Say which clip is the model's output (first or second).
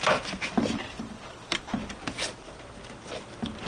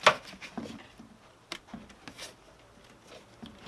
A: first